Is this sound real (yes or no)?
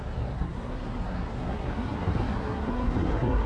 no